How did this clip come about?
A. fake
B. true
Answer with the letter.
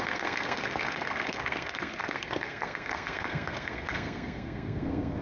A